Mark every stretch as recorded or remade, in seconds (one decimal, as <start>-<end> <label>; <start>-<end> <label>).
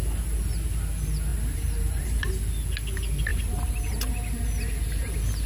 0.0-1.3 recorded; 1.3-2.3 remade; 2.3-3.3 recorded; 3.3-3.9 remade; 3.9-5.5 recorded